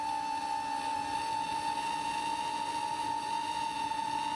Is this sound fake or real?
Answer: real